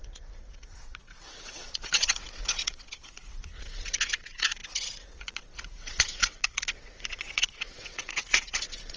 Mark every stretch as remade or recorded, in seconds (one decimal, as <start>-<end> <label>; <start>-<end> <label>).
0.0-9.0 remade